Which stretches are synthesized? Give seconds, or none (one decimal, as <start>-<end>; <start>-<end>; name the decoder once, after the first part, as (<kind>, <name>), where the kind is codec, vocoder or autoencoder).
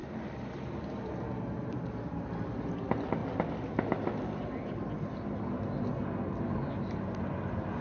none